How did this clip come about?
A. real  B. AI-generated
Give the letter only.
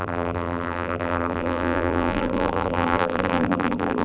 B